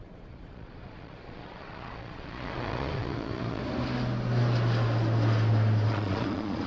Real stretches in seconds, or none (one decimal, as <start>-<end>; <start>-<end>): 3.6-5.9